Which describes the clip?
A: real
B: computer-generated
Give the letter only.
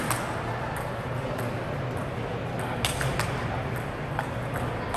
A